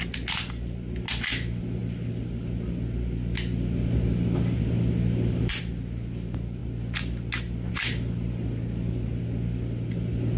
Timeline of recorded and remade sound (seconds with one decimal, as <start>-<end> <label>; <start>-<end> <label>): 0.0-10.4 recorded